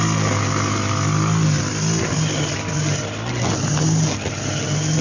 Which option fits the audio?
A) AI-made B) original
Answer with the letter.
B